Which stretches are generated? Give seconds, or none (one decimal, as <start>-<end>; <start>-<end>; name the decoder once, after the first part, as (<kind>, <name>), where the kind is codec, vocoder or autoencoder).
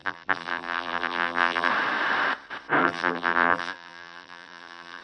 0.0-1.7 (vocoder, BigVGAN v2); 2.8-5.0